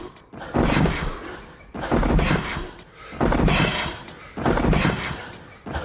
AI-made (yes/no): no